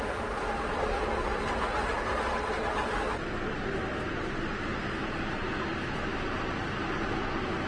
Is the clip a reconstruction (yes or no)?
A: no